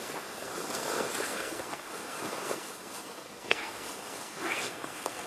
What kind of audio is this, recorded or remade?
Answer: remade